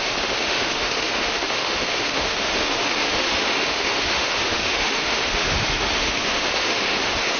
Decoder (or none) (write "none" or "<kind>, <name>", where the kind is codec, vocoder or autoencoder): autoencoder, DAC-VAE